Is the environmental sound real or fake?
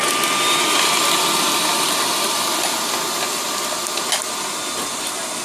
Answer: real